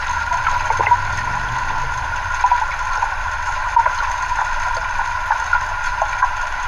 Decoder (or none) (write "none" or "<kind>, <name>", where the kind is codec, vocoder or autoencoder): none